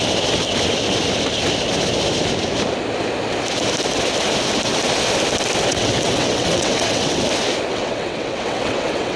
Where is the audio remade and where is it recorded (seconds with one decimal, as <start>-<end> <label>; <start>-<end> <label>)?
0.0-5.7 recorded; 5.7-7.2 remade; 7.2-7.7 recorded; 7.7-9.2 remade